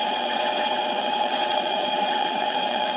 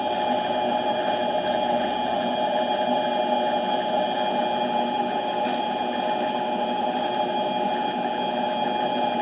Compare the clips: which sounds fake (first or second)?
first